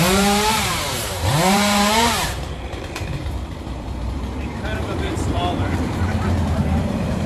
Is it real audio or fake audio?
fake